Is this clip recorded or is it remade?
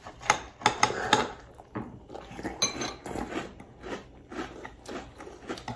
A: recorded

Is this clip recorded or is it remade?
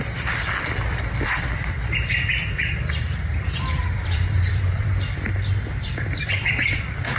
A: remade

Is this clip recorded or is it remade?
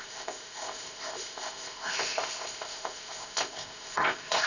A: remade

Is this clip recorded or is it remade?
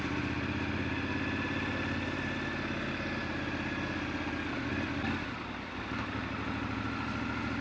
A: recorded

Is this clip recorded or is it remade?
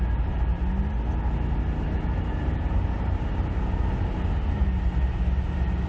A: recorded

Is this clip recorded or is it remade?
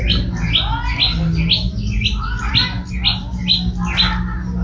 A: recorded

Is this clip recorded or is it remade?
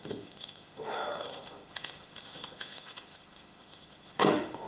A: remade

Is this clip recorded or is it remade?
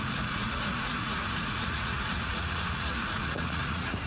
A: remade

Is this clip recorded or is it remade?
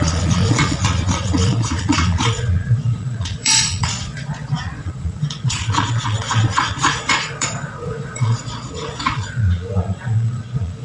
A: remade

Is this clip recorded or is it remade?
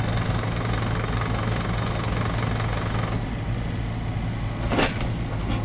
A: recorded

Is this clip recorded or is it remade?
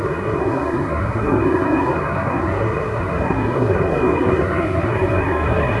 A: remade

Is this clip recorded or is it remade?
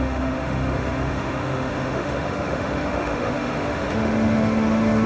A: remade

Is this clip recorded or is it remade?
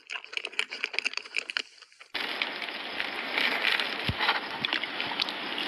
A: recorded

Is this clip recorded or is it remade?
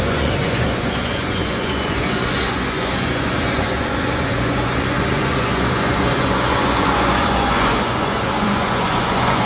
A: remade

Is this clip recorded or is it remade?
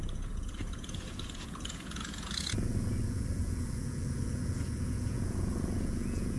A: remade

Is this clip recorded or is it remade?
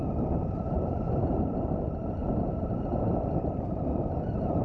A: remade